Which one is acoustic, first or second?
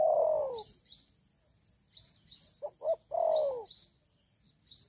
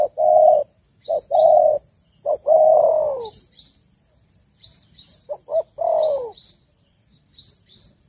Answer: first